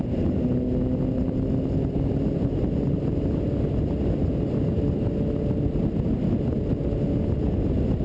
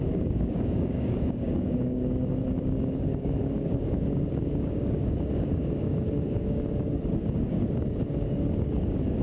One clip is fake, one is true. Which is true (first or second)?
first